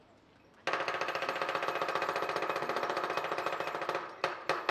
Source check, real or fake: real